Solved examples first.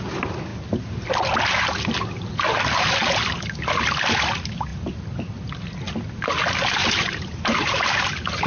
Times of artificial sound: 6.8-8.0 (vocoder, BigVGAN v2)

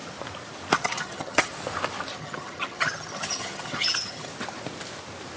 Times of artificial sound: 0.8-1.5 (vocoder, HiFi-GAN); 2.1-4.3

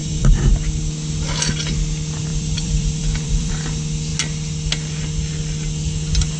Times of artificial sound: 0.0-0.5 (vocoder, BigVGAN v2); 2.3-3.5

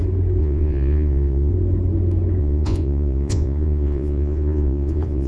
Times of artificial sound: 0.4-1.5 (vocoder, Vocos); 2.4-5.3

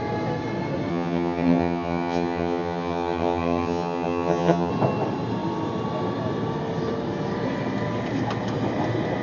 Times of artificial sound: 0.9-4.7 (vocoder, HiFi-GAN)

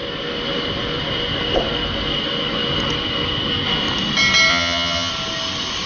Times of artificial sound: 4.5-5.1 (vocoder, HiFi-GAN)